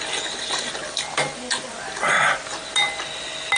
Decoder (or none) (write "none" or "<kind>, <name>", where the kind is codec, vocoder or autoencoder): none